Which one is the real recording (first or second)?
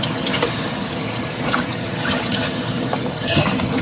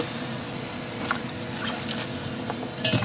second